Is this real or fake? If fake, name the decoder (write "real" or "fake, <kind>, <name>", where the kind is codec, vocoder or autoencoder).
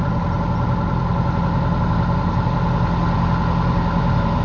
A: real